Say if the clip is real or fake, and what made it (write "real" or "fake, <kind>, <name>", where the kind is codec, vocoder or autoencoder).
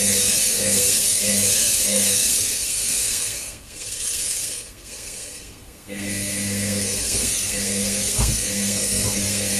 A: fake, codec, SNAC